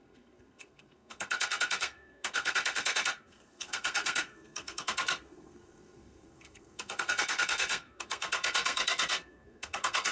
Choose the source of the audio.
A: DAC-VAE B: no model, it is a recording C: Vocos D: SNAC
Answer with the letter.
D